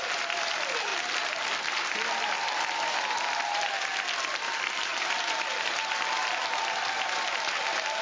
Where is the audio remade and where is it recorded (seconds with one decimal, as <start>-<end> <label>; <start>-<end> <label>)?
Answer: 0.0-0.9 remade; 0.9-2.1 recorded; 2.1-8.0 remade